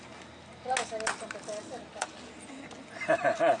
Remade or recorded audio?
recorded